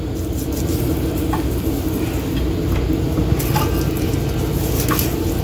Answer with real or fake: real